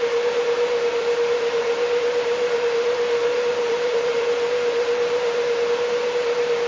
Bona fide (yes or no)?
no